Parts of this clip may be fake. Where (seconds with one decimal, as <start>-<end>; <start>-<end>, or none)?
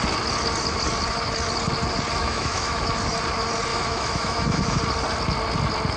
2.2-2.8; 3.7-4.8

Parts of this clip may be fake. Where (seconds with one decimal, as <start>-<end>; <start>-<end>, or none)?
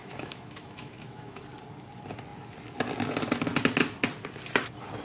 0.0-1.4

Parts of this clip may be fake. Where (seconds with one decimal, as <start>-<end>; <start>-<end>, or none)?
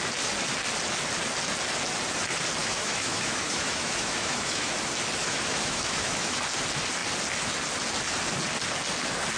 2.6-4.7; 5.2-6.4